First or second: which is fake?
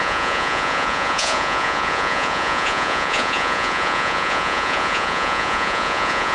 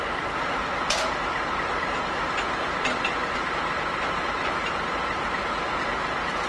first